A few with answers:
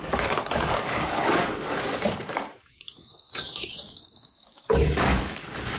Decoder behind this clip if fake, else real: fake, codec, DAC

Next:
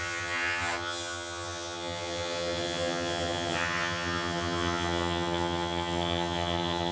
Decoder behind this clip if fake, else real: fake, vocoder, HiFi-GAN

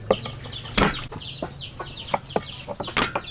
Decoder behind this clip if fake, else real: real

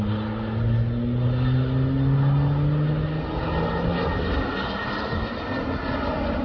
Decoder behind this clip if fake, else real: real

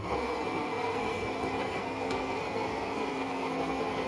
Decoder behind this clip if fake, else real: fake, codec, SNAC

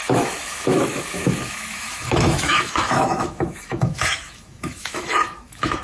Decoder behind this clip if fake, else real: fake, autoencoder, DAC-VAE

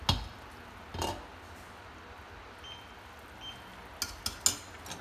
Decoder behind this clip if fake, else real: real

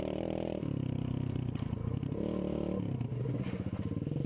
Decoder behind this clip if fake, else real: real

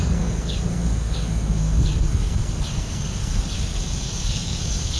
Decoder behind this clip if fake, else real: fake, codec, SNAC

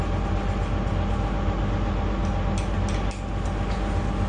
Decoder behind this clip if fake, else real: real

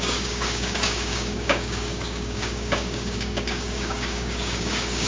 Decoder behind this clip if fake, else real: fake, codec, DAC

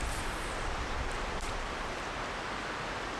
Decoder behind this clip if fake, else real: fake, vocoder, BigVGAN v2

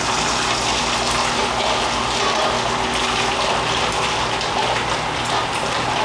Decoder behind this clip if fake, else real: real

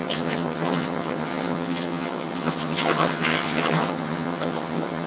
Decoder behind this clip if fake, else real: fake, vocoder, HiFi-GAN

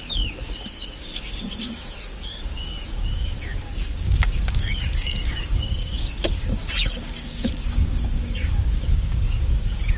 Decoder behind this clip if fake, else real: fake, codec, DAC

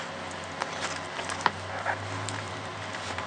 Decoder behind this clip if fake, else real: real